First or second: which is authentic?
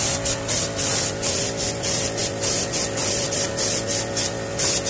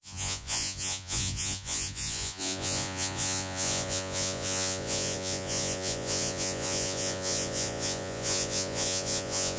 first